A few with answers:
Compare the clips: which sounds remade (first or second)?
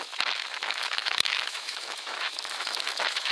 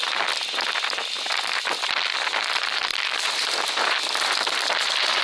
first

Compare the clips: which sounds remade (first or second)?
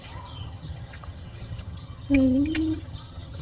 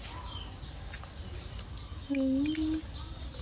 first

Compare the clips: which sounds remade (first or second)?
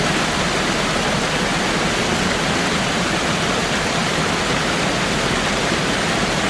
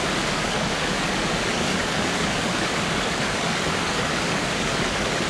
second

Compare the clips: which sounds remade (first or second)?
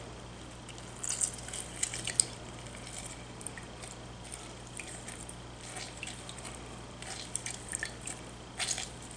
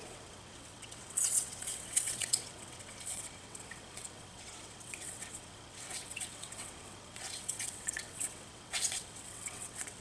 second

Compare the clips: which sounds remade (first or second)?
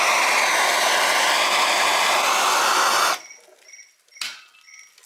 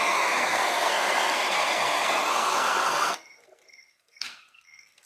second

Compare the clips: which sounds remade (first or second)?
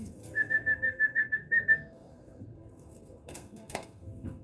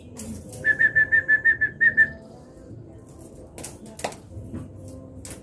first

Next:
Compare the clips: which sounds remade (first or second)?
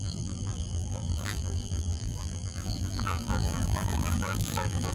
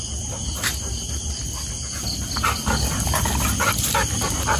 first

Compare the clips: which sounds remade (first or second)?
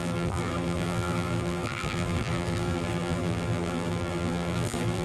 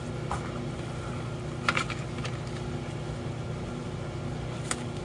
first